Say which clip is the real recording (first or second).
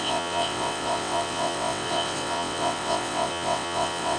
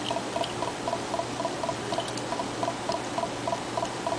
second